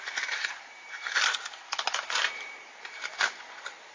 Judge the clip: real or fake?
fake